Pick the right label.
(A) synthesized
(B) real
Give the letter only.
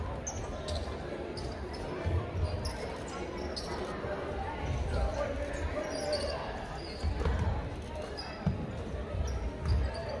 B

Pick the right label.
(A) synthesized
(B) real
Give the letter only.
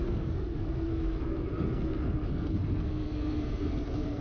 A